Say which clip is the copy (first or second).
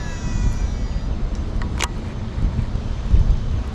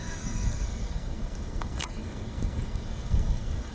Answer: second